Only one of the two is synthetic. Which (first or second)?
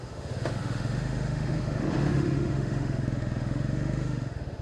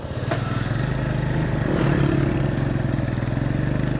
first